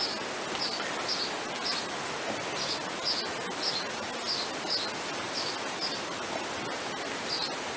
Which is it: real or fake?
real